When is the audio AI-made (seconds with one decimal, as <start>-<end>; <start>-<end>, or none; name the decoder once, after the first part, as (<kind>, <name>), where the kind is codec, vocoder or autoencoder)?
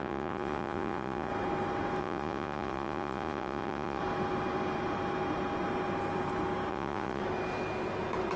0.0-1.3 (vocoder, Vocos); 2.0-4.0; 6.7-7.2